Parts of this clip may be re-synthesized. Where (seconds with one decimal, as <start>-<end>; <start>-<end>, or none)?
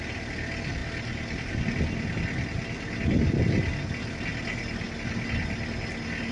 none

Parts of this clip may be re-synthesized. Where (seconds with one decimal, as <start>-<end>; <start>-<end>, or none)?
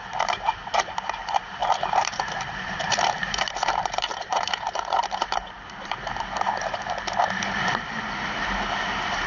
0.0-9.3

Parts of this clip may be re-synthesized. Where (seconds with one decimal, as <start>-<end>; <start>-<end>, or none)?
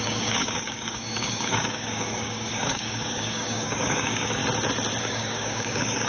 0.0-4.4; 5.0-6.1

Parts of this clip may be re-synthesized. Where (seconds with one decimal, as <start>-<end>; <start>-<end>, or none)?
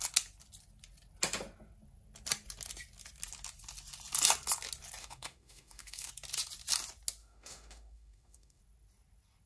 5.0-6.1; 7.2-8.6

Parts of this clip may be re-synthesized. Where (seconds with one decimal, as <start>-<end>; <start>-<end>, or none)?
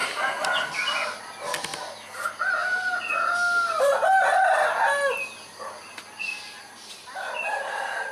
1.2-1.7; 6.6-8.1